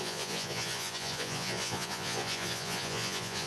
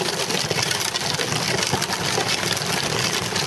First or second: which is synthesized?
first